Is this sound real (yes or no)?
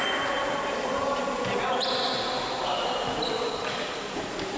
yes